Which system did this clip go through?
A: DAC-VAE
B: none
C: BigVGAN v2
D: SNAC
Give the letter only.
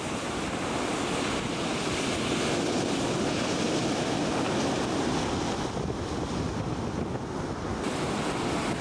B